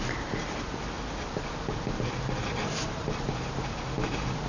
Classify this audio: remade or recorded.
recorded